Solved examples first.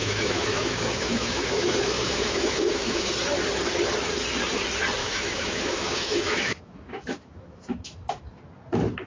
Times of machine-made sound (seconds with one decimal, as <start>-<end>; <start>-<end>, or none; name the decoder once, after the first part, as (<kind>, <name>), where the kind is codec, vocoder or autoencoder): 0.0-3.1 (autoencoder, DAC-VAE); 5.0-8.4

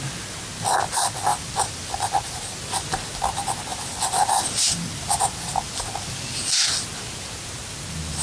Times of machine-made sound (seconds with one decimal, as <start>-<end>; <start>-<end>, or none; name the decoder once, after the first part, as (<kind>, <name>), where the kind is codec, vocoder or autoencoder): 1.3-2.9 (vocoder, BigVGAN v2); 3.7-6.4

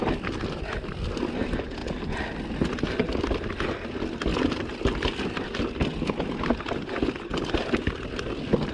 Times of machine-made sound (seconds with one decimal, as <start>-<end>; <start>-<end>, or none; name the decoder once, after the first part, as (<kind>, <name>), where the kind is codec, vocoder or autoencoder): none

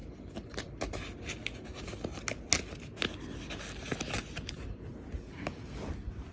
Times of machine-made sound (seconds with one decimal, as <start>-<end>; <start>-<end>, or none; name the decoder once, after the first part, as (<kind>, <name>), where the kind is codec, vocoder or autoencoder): 0.0-1.2 (vocoder, BigVGAN v2)

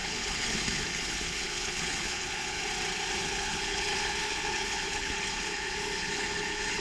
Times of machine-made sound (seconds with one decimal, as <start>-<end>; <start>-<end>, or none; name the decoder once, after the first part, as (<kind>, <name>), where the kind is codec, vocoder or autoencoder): 0.0-2.6 (codec, HILCodec); 3.2-6.8

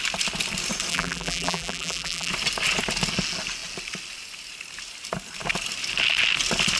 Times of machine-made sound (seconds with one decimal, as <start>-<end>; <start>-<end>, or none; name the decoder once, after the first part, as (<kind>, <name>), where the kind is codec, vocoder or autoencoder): 0.9-2.3 (vocoder, BigVGAN v2)